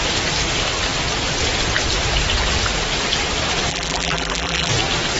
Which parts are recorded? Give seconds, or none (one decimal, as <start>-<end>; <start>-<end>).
0.0-3.7; 4.7-5.2